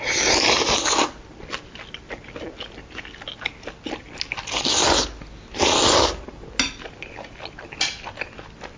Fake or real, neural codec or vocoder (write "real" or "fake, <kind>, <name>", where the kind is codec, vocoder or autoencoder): real